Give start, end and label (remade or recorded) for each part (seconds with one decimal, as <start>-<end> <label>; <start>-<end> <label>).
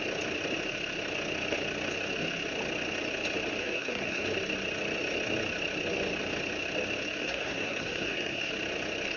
0.0-3.6 recorded; 3.6-4.2 remade; 4.2-7.2 recorded; 7.2-8.5 remade; 8.5-9.2 recorded